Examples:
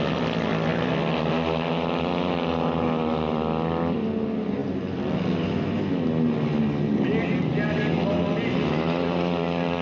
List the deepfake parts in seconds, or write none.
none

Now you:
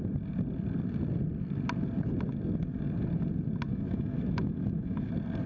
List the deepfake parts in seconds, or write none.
3.7-5.1 (autoencoder, DAC-VAE)

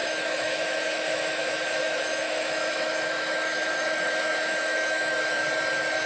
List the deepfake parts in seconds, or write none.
0.0-5.4 (autoencoder, DAC-VAE)

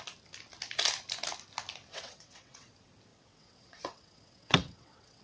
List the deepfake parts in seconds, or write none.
1.9-2.7 (vocoder, WaveNeXt); 3.1-5.2

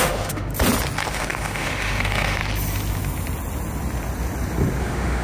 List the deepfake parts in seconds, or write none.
0.0-0.5 (autoencoder, DAC-VAE); 1.1-2.4; 4.8-5.2

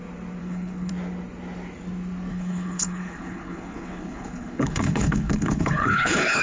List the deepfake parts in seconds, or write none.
0.4-0.9 (codec, HILCodec); 2.3-6.4